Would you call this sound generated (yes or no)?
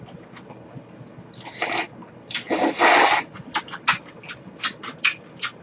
no